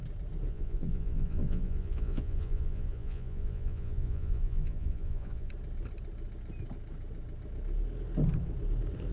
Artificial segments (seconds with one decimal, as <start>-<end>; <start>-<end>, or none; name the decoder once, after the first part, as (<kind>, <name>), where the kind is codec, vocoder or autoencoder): 0.5-5.5 (vocoder, Vocos)